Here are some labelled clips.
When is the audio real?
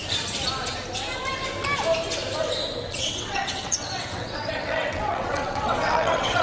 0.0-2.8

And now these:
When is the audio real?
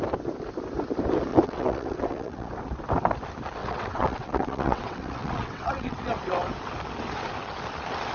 0.0-1.3; 2.5-3.6; 6.1-8.1